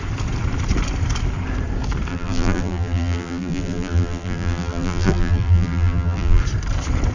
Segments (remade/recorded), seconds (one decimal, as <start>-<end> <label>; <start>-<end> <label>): 0.0-2.1 recorded; 2.1-6.4 remade; 6.4-7.1 recorded